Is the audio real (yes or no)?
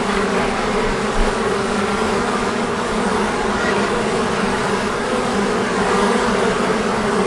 no